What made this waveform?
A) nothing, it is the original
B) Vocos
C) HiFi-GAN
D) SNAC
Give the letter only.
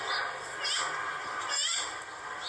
A